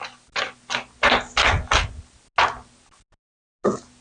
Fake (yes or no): no